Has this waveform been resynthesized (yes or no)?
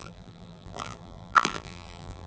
yes